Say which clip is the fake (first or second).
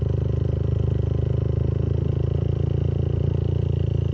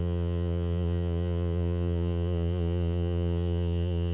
second